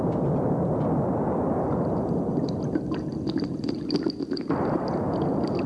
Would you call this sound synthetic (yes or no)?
no